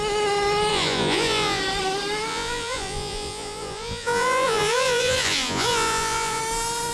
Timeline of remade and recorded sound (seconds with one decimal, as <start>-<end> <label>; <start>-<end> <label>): 0.0-0.7 recorded; 0.7-1.6 remade; 1.6-2.3 recorded; 2.3-6.4 remade; 6.4-6.9 recorded